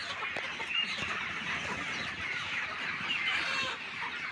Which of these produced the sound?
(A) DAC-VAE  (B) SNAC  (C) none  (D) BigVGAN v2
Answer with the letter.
C